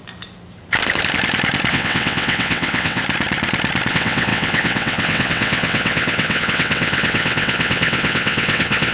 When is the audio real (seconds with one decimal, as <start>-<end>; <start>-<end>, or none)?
0.0-1.7; 3.0-3.9